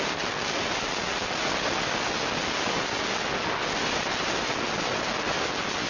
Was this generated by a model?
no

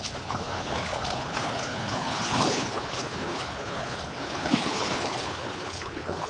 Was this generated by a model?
yes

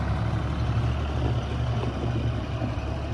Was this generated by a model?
no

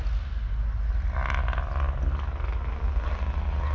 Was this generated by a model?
no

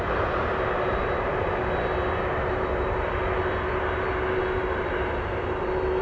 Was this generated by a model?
no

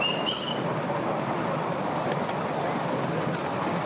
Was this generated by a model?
no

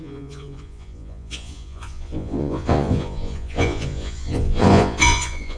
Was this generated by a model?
yes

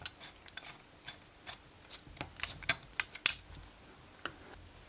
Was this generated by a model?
no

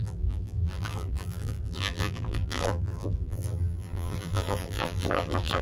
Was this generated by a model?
yes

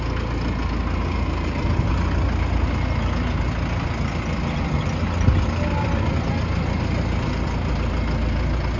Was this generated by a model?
no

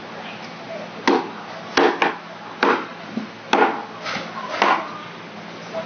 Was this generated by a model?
no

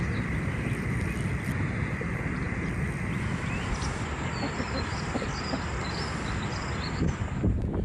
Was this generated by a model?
yes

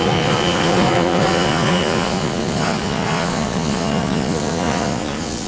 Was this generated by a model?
yes